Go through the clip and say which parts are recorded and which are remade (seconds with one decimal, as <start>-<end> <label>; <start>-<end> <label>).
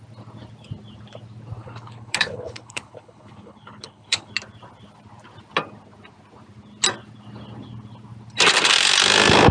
0.0-1.6 recorded; 1.6-4.3 remade; 4.3-9.5 recorded